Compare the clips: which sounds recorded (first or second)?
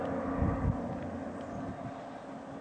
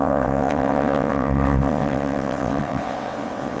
first